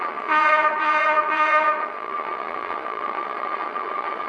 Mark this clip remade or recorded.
remade